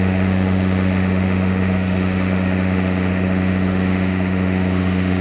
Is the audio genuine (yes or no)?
no